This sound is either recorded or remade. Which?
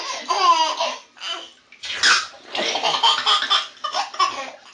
recorded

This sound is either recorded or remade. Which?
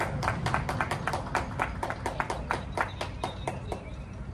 recorded